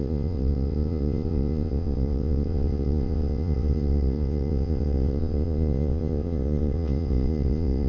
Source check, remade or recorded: remade